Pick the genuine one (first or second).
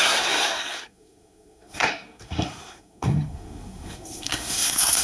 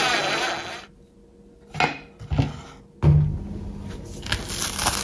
second